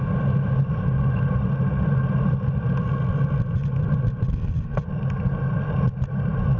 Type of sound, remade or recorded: recorded